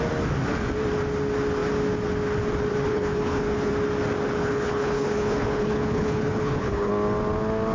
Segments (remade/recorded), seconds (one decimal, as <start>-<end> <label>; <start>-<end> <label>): 0.0-2.9 recorded; 2.9-3.7 remade; 3.7-4.4 recorded; 4.4-6.9 remade; 6.9-7.7 recorded